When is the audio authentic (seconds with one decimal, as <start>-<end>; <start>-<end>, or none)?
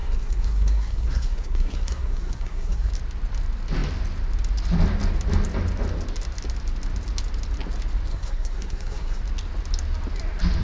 2.9-8.1; 9.2-10.6